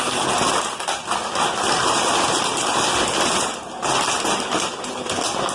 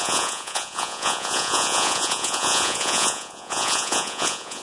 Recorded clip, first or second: first